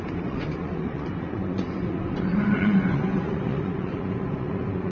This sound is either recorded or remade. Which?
remade